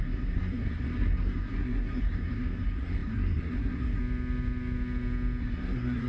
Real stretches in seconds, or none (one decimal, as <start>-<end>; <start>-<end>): 4.0-5.4